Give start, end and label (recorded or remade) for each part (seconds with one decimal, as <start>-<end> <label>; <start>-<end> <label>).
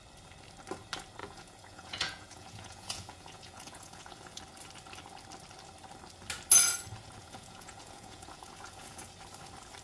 0.0-1.2 recorded; 1.2-4.4 remade; 4.4-7.2 recorded; 7.2-9.1 remade; 9.1-9.8 recorded